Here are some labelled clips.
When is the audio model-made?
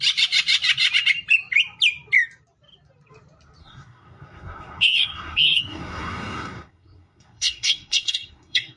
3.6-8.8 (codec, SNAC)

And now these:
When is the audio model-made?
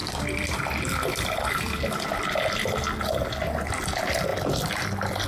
0.0-2.5 (vocoder, BigVGAN v2); 4.3-5.3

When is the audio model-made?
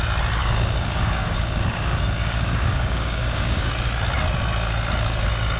0.4-3.7 (codec, DAC)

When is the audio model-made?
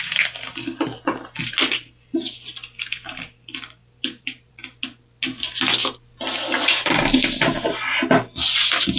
3.8-4.5 (vocoder, BigVGAN v2)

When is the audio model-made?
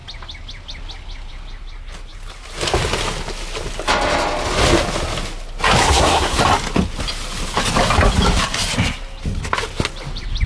5.8-6.4 (codec, SNAC)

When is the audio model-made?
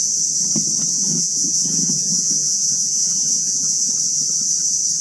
0.9-3.9 (vocoder, Vocos)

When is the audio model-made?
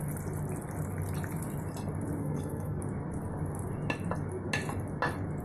2.2-2.8 (codec, SNAC)